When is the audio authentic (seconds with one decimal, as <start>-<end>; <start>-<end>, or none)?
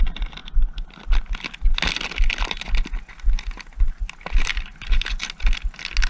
0.0-6.1